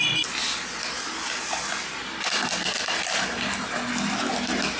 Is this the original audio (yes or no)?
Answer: yes